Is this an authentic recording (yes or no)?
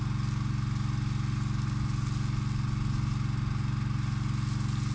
yes